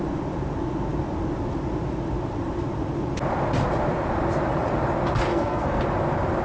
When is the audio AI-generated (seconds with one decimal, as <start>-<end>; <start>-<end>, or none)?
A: 5.3-5.8

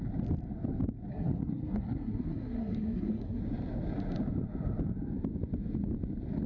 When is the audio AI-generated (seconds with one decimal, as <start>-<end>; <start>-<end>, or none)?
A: 1.1-3.4

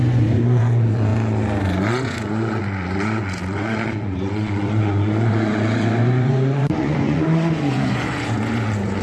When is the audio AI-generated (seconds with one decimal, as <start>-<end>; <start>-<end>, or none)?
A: 0.0-1.1; 1.6-9.0

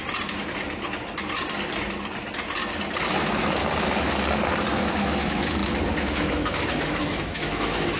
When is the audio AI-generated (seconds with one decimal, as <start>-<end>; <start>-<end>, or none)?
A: 3.1-3.6; 4.9-8.0

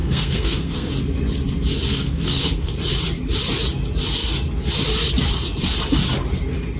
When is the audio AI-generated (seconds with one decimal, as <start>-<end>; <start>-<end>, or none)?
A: 0.0-0.9; 1.9-2.7

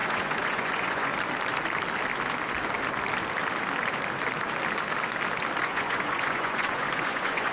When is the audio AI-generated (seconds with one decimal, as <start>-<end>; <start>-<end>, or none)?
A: 0.0-1.1; 5.6-7.5

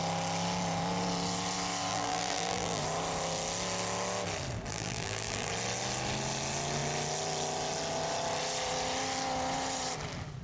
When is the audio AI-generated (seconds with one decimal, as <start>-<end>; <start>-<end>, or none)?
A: 1.9-2.8; 4.7-5.5